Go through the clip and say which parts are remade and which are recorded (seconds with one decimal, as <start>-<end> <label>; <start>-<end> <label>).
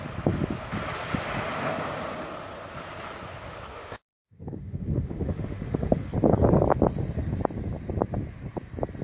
0.0-3.7 recorded; 3.7-6.1 remade; 6.1-9.0 recorded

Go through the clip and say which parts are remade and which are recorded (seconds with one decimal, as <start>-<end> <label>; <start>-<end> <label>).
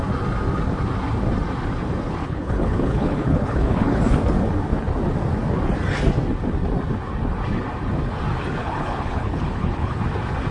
0.0-2.2 recorded; 2.2-4.0 remade; 4.0-8.6 recorded; 8.6-10.0 remade; 10.0-10.5 recorded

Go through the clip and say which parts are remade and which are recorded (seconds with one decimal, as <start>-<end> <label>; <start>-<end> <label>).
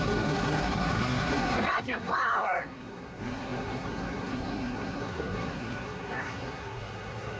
0.0-7.4 remade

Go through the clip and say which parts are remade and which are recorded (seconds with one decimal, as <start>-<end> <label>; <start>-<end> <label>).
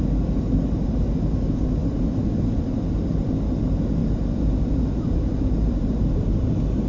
0.0-4.0 recorded; 4.0-6.5 remade; 6.5-6.9 recorded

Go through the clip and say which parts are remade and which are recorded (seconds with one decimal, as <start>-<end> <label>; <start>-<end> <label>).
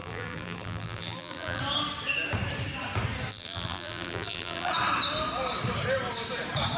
0.0-1.6 remade; 1.6-3.3 recorded; 3.3-4.7 remade; 4.7-6.8 recorded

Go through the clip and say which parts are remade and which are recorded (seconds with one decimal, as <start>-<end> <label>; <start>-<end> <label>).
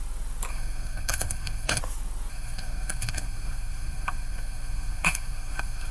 0.0-0.5 recorded; 0.5-1.8 remade; 1.8-2.3 recorded; 2.3-5.9 remade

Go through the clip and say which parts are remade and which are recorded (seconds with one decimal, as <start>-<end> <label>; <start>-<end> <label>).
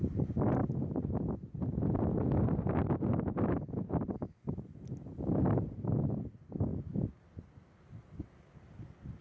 0.0-9.2 recorded